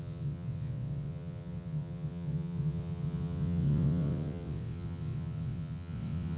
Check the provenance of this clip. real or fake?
fake